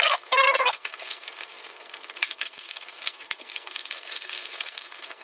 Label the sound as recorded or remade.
remade